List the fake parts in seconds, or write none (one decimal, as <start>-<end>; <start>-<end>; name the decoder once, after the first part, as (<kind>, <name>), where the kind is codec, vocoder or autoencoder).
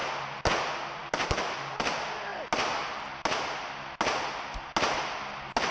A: none